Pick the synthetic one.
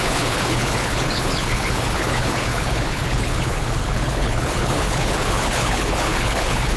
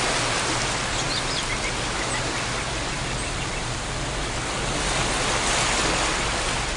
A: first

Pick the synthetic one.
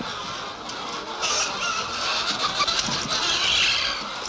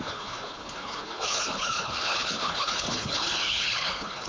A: second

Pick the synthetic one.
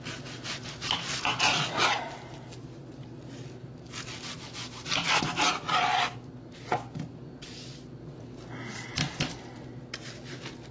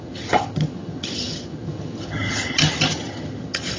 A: second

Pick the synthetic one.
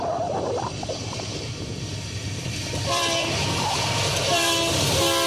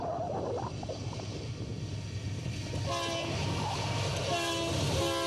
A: first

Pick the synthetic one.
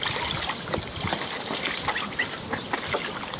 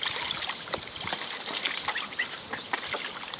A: second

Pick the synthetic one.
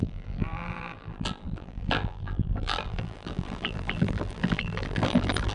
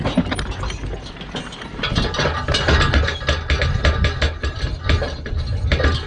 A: first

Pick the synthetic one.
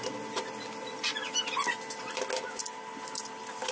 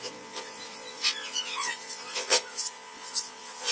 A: second